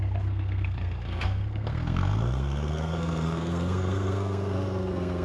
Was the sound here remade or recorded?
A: remade